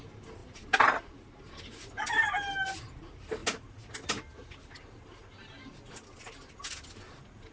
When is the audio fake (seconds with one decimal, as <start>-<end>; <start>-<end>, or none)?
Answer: none